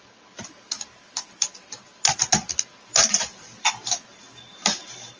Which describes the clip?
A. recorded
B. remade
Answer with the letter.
A